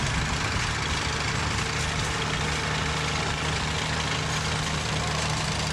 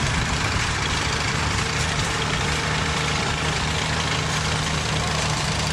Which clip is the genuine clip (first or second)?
first